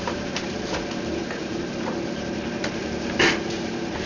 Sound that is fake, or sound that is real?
fake